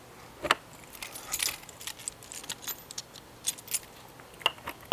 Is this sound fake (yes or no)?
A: no